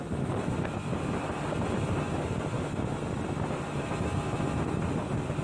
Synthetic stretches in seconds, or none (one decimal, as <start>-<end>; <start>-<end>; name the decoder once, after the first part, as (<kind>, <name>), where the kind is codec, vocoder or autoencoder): none